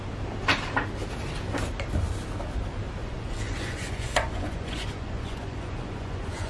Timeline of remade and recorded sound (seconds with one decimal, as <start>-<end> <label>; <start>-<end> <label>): 0.0-3.0 recorded; 3.0-6.5 remade